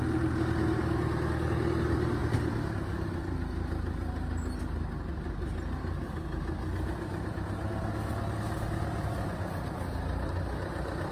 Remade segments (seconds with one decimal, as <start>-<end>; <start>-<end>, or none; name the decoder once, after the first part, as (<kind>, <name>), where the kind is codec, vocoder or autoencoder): none